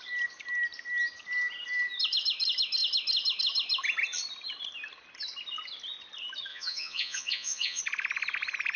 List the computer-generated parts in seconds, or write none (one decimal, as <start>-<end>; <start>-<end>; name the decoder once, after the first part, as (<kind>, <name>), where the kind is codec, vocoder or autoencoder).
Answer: 6.5-7.8 (vocoder, Vocos)